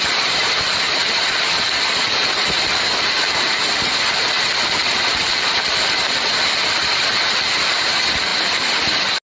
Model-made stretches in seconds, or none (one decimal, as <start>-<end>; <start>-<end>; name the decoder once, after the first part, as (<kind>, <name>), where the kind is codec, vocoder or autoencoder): none